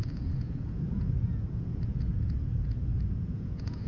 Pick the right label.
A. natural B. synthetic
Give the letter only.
B